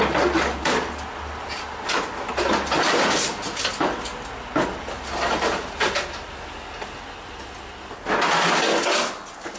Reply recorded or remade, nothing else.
recorded